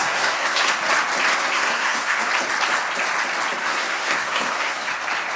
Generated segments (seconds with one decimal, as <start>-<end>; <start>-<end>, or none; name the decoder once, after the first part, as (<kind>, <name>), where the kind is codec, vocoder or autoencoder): 0.0-0.7 (codec, SNAC); 1.3-2.3; 3.6-4.9